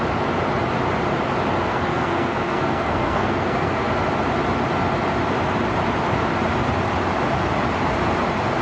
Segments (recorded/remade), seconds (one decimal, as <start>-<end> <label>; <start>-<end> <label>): 0.0-1.7 recorded; 1.7-3.9 remade; 3.9-8.6 recorded